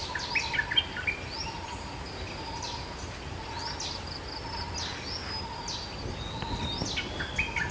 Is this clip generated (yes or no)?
no